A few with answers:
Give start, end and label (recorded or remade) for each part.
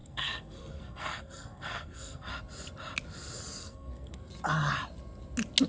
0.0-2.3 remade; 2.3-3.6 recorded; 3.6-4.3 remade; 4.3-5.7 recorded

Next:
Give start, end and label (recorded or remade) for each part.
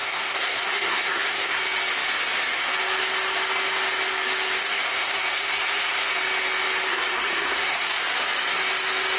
0.0-1.6 remade; 1.6-4.6 recorded; 4.6-6.1 remade; 6.1-6.9 recorded; 6.9-8.0 remade; 8.0-9.2 recorded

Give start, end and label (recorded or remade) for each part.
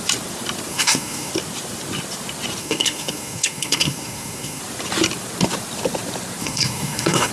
0.0-0.7 recorded; 0.7-1.3 remade; 1.3-2.6 recorded; 2.6-4.6 remade; 4.6-6.4 recorded; 6.4-7.3 remade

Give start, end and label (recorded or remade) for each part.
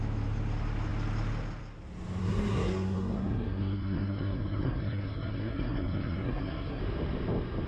0.0-2.2 recorded; 2.2-6.8 remade; 6.8-7.7 recorded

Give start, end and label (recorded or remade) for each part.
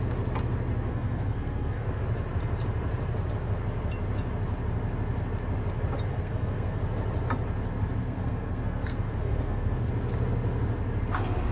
0.0-0.9 recorded; 0.9-2.0 remade; 2.0-6.1 recorded; 6.1-6.8 remade; 6.8-8.0 recorded; 8.0-9.9 remade; 9.9-11.5 recorded